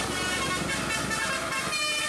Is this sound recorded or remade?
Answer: remade